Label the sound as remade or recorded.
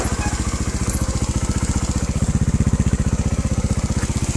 recorded